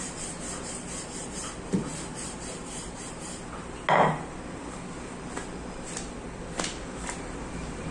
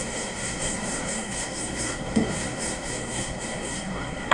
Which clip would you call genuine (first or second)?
first